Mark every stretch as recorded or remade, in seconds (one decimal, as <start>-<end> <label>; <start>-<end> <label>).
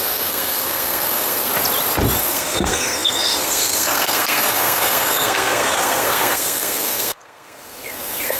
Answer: 0.0-1.5 remade; 1.5-2.2 recorded; 2.2-8.4 remade